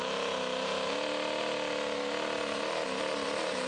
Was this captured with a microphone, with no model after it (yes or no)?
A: yes